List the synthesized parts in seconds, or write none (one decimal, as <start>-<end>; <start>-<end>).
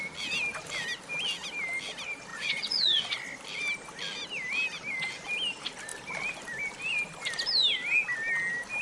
2.3-3.1